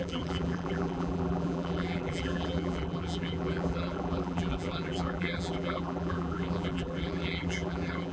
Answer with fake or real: fake